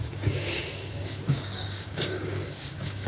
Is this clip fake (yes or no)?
yes